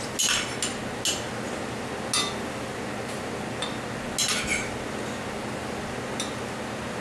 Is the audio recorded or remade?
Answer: recorded